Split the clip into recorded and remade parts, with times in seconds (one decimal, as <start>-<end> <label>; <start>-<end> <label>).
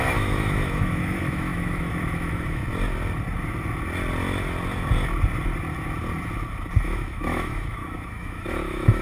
0.0-2.6 remade; 2.6-6.8 recorded; 6.8-9.0 remade